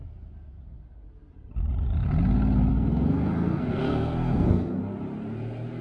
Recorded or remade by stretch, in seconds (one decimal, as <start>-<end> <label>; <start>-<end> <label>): 0.0-2.7 recorded; 2.7-4.8 remade; 4.8-5.8 recorded